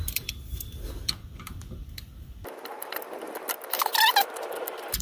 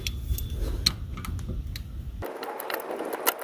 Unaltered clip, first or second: second